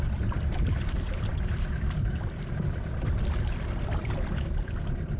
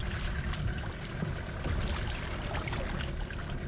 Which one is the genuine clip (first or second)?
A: second